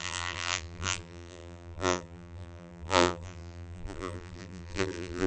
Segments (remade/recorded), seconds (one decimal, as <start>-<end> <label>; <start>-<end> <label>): 0.0-5.3 remade